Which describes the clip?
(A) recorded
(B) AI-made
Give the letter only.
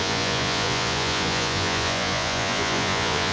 B